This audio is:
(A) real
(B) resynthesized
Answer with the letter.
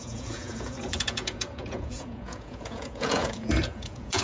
B